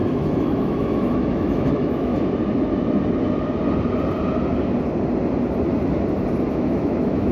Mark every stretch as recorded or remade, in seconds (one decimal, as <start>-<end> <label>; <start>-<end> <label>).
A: 0.0-2.1 remade; 2.1-6.5 recorded; 6.5-7.3 remade